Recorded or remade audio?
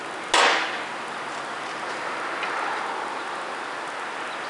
recorded